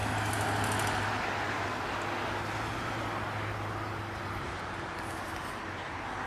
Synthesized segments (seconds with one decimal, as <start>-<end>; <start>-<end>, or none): none